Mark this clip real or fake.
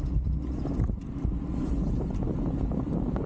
real